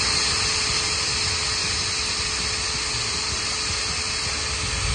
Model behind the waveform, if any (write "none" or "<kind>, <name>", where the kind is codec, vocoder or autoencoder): none